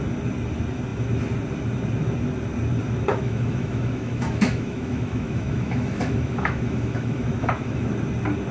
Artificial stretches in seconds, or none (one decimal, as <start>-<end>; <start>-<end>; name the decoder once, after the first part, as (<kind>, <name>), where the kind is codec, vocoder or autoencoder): 3.1-7.9 (autoencoder, DAC-VAE)